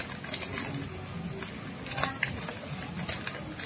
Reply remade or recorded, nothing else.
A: recorded